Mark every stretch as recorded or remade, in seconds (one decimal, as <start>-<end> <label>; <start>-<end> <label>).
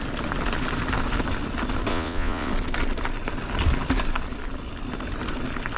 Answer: 0.0-1.9 recorded; 1.9-2.5 remade; 2.5-5.8 recorded